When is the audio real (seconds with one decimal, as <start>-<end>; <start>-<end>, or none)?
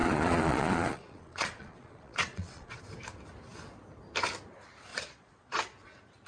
2.8-4.9; 5.6-6.3